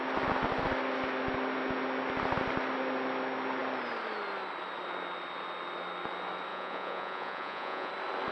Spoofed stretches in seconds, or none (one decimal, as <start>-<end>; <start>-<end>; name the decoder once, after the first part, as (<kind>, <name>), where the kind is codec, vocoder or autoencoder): 6.5-7.9 (vocoder, Vocos)